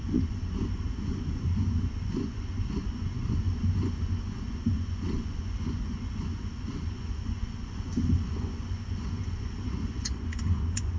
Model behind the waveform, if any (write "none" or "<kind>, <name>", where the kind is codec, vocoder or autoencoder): vocoder, Vocos